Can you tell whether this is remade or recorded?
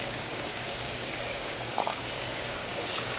remade